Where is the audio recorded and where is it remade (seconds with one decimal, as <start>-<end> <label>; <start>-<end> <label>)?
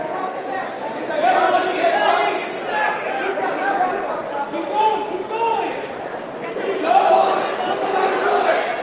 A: 0.0-8.8 recorded